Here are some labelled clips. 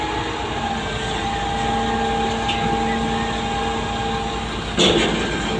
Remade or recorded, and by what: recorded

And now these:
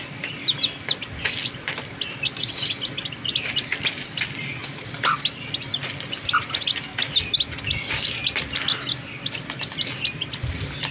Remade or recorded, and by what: recorded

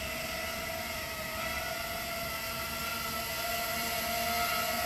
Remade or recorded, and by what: recorded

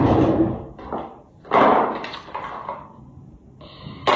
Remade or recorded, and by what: recorded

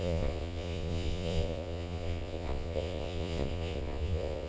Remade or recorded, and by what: remade, vocoder, Vocos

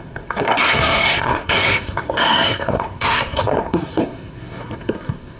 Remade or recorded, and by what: remade, codec, SNAC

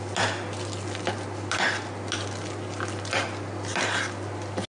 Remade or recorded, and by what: recorded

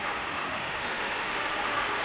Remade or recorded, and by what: remade, autoencoder, DAC-VAE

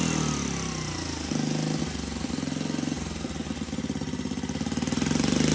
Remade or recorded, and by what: recorded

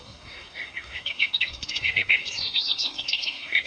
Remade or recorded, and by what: remade, codec, SNAC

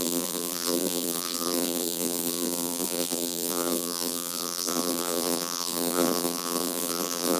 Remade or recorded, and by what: remade, vocoder, BigVGAN v2